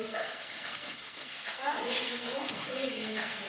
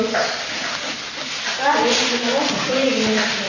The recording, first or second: second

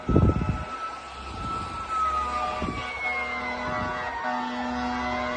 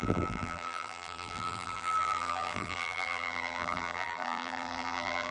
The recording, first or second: first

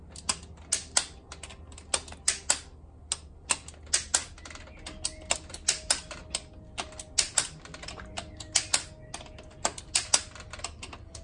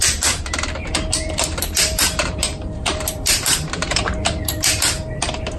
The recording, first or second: first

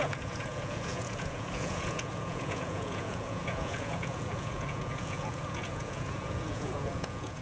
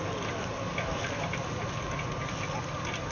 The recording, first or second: second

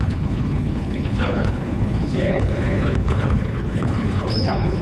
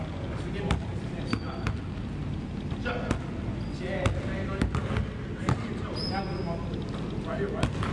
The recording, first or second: second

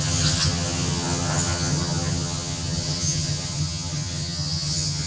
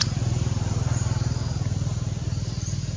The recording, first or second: second